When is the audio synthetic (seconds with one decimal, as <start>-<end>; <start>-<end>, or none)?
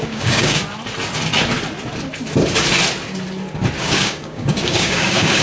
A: 0.0-0.6; 3.8-5.4